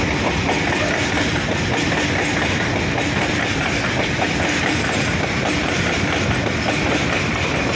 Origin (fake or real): fake